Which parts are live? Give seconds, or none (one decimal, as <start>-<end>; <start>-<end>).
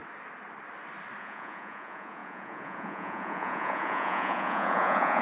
0.0-1.2